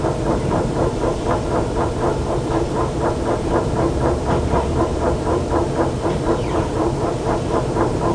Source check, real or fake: fake